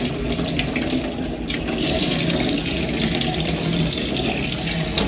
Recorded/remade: recorded